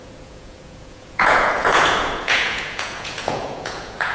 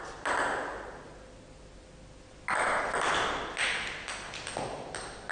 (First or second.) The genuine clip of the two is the second